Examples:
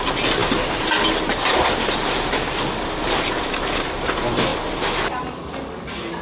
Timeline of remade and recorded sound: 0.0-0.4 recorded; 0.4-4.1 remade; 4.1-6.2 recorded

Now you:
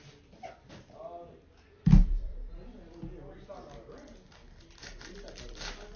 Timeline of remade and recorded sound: 0.0-2.0 recorded; 2.0-2.5 remade; 2.5-4.4 recorded; 4.4-5.4 remade; 5.4-6.0 recorded

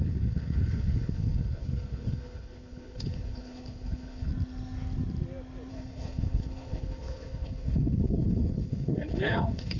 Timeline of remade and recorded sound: 0.0-4.3 remade; 4.3-5.7 recorded; 5.7-9.8 remade

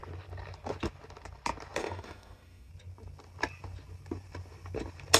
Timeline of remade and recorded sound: 0.0-1.8 recorded; 1.8-2.7 remade; 2.7-5.2 recorded

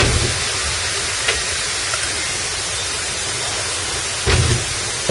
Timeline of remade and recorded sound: 0.0-2.5 recorded; 2.5-3.5 remade; 3.5-5.1 recorded

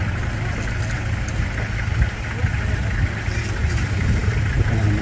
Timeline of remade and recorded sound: 0.0-5.0 recorded